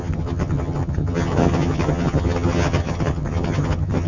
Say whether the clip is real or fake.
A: fake